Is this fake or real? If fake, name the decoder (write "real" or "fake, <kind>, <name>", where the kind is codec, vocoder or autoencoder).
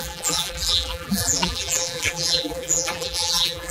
fake, vocoder, BigVGAN v2